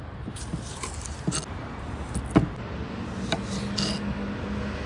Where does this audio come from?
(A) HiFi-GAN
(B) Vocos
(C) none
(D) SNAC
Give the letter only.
C